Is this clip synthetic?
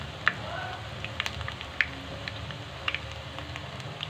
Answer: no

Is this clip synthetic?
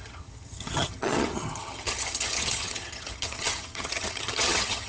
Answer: yes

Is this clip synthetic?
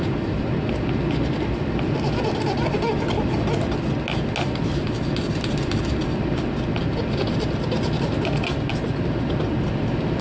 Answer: no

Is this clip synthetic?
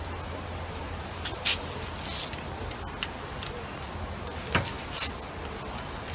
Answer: no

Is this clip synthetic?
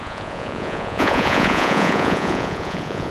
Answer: yes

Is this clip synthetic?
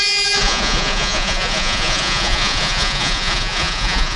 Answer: yes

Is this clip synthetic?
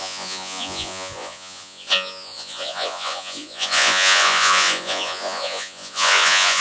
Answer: yes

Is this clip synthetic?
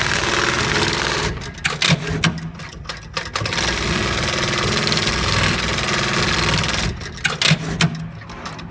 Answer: no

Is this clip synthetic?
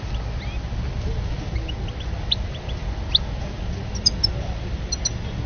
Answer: no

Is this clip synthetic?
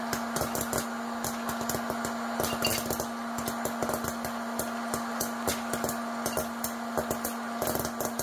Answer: no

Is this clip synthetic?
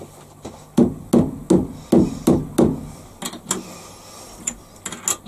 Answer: no